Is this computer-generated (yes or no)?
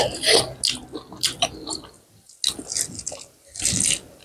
no